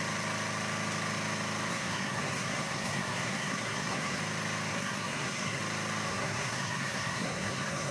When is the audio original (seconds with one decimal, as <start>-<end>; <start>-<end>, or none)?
0.0-1.7; 4.2-4.7; 5.6-6.1